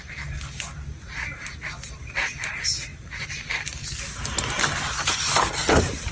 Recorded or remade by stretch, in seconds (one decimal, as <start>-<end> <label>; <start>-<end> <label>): 0.0-6.1 recorded